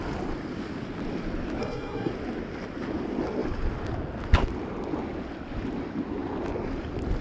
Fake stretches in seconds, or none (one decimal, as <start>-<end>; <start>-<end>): 1.6-2.1